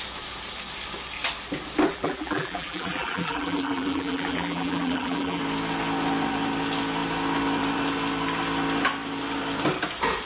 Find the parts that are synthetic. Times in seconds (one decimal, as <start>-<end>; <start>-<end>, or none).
1.9-5.4